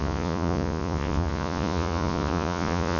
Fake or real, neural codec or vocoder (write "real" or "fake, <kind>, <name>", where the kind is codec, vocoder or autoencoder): fake, vocoder, Vocos